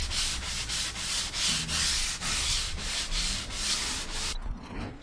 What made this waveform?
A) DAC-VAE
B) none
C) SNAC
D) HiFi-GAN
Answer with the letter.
B